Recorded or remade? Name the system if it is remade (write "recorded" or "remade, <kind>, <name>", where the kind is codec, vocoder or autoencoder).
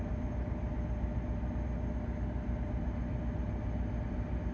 recorded